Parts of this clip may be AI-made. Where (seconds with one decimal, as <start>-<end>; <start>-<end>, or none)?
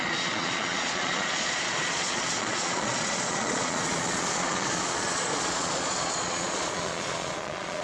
0.0-7.8